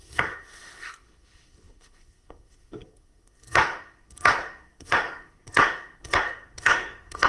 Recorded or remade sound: remade